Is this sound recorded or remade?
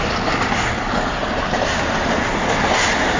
recorded